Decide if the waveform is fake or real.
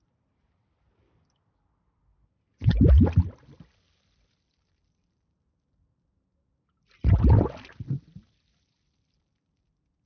real